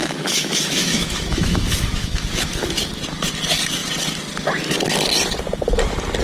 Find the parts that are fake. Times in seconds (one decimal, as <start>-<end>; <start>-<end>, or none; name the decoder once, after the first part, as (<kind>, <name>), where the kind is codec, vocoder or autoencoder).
0.0-2.7 (autoencoder, DAC-VAE)